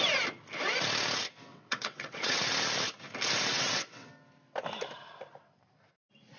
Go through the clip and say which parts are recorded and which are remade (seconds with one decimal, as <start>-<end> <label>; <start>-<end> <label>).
0.0-1.5 recorded; 1.5-2.4 remade; 2.4-3.5 recorded; 3.5-4.1 remade; 4.1-6.4 recorded